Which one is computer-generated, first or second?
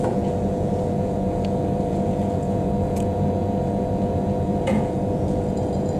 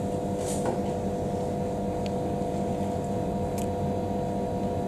first